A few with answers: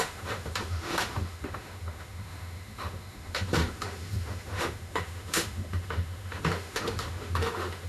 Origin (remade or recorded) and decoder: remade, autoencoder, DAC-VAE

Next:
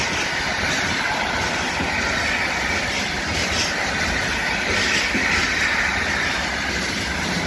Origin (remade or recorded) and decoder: recorded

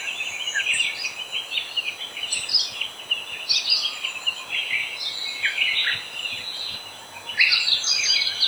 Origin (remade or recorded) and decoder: recorded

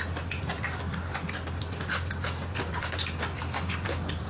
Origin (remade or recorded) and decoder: recorded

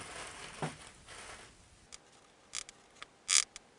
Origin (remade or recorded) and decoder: recorded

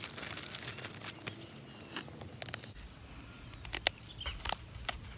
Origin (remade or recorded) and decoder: recorded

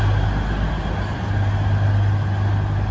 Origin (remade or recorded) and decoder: recorded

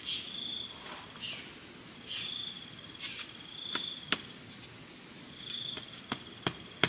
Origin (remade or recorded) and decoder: recorded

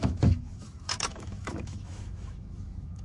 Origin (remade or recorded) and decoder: remade, autoencoder, DAC-VAE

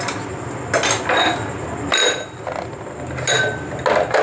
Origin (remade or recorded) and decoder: recorded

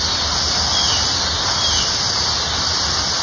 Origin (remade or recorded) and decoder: recorded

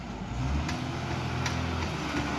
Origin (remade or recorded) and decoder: recorded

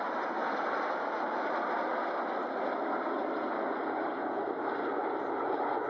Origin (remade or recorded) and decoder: recorded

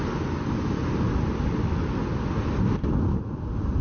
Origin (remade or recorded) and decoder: recorded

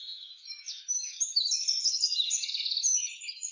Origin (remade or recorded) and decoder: remade, autoencoder, DAC-VAE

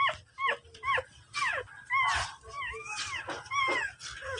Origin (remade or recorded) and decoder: recorded